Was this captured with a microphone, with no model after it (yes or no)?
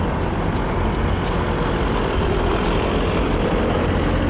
yes